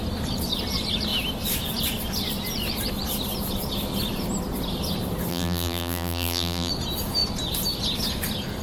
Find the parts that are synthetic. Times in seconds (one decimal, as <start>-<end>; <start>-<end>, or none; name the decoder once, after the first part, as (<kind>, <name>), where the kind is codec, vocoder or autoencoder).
5.3-6.7 (vocoder, BigVGAN v2)